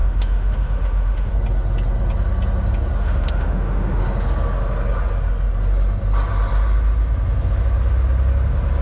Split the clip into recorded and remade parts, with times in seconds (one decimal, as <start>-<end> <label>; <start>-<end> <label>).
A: 0.0-1.3 remade; 1.3-3.0 recorded; 3.0-4.0 remade; 4.0-8.8 recorded